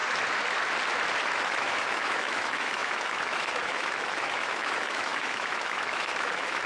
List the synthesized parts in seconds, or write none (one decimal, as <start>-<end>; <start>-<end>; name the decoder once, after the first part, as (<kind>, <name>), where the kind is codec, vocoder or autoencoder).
1.4-6.7 (autoencoder, DAC-VAE)

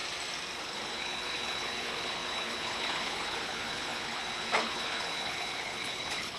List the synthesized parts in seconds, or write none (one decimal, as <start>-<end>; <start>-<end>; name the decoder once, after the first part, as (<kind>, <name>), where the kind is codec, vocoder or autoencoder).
0.6-6.4 (codec, HILCodec)

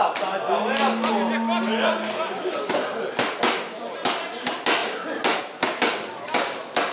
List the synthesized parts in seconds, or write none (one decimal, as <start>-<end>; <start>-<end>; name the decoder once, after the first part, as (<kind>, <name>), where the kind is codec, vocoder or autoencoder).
none

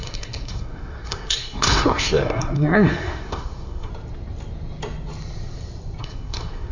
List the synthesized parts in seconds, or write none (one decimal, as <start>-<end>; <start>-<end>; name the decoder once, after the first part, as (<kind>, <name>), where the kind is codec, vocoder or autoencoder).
0.0-3.9 (codec, SNAC); 6.0-6.7

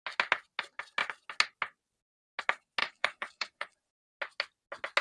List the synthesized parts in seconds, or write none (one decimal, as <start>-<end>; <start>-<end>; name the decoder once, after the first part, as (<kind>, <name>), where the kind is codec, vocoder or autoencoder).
2.8-3.9 (vocoder, Vocos)

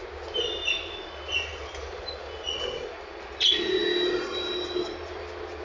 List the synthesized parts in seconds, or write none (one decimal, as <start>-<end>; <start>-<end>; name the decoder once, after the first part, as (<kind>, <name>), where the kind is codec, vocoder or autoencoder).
none

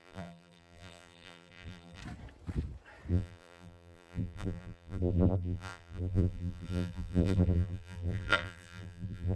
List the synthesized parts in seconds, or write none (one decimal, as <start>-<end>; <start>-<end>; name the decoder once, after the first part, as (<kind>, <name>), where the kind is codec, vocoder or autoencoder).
0.0-2.0 (vocoder, BigVGAN v2); 3.1-9.3